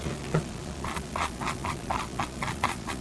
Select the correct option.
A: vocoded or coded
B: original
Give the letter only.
A